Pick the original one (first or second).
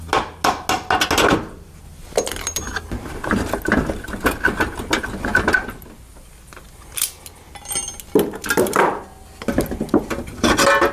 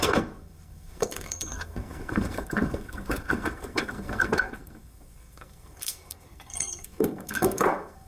first